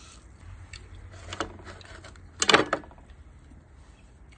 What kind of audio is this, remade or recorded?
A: recorded